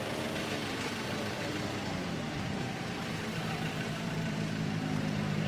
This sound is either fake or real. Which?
fake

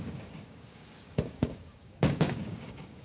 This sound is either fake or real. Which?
fake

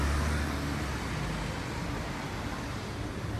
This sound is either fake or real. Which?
real